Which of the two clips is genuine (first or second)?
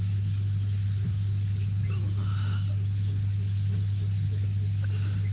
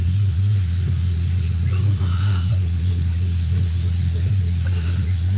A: first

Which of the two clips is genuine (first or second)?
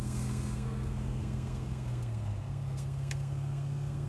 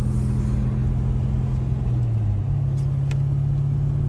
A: second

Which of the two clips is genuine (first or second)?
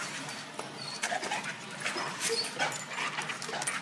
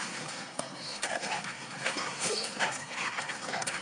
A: first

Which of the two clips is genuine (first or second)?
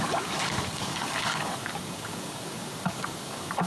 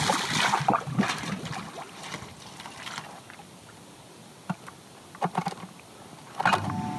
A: second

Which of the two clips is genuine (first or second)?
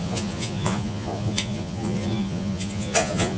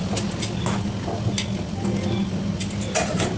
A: second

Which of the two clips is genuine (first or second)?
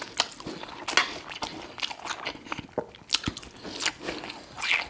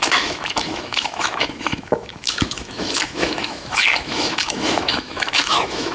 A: first